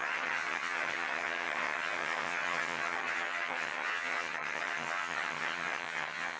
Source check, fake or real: fake